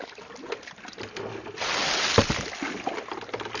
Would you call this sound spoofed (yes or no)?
no